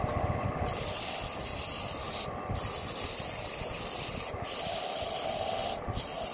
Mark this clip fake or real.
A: real